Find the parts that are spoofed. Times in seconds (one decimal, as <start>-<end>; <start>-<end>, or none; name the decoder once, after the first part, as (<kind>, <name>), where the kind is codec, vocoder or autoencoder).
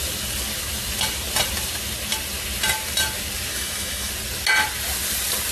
3.5-4.1 (autoencoder, DAC-VAE)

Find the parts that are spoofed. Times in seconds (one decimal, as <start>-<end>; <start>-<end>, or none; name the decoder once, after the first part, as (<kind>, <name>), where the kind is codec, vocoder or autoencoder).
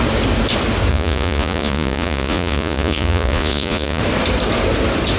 0.9-4.0 (vocoder, Vocos)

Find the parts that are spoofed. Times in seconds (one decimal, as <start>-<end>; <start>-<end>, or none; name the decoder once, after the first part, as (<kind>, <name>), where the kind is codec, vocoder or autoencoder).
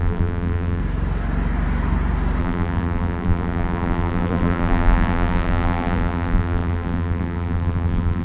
0.0-0.8 (vocoder, BigVGAN v2); 2.4-8.2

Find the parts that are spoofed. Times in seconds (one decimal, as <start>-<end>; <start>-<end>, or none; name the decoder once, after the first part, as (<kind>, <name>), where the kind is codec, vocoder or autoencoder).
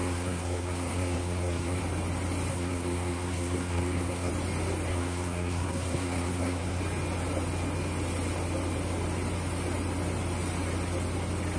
0.0-1.8 (codec, SNAC); 2.5-4.3; 4.9-6.8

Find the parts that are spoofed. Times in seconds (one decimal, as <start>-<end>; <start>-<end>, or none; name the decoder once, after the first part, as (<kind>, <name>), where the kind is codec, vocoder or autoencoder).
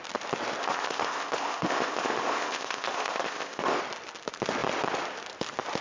0.6-3.8 (codec, ZipCodec)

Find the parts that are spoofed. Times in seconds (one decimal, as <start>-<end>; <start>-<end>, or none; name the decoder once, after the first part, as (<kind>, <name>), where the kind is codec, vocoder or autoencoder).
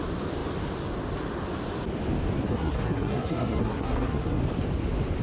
2.5-4.4 (codec, SNAC)